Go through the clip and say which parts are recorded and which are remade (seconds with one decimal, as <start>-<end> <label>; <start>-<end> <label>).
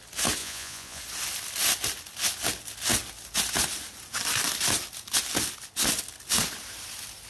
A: 0.0-0.4 recorded; 0.4-1.0 remade; 1.0-7.3 recorded